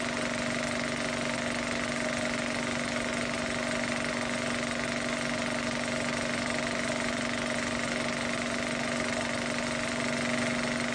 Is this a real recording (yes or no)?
yes